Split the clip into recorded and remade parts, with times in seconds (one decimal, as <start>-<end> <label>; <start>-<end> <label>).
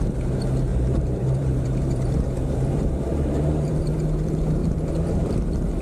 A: 0.0-0.7 recorded; 0.7-3.8 remade; 3.8-4.6 recorded; 4.6-5.8 remade